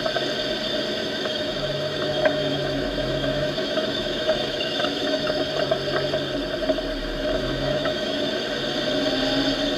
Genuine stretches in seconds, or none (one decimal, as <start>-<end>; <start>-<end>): 0.0-1.0; 5.5-7.0; 8.3-9.8